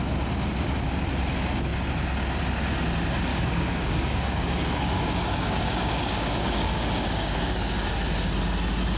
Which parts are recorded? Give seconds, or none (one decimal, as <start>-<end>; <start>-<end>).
0.0-3.3; 7.9-9.0